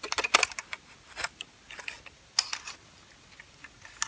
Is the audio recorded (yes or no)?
yes